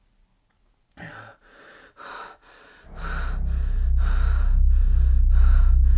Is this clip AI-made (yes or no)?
no